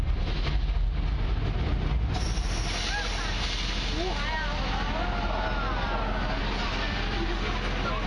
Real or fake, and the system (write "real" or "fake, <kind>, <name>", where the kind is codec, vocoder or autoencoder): real